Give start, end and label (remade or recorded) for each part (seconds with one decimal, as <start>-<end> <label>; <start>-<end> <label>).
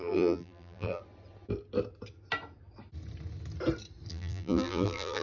0.0-1.0 remade; 1.0-4.1 recorded; 4.1-5.2 remade